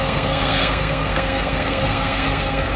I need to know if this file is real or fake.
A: fake